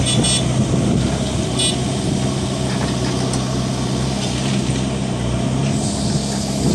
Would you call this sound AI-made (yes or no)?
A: no